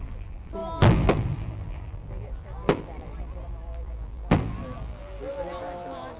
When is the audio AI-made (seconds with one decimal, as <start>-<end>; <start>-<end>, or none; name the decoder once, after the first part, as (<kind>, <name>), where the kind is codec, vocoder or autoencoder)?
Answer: 0.0-6.2 (vocoder, BigVGAN v2)